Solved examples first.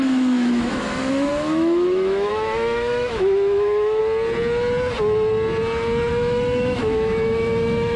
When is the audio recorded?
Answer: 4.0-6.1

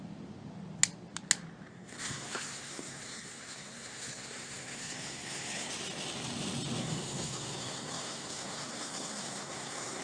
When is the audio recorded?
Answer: 0.0-1.7; 5.7-6.8